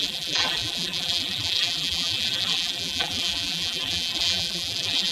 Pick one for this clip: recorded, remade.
remade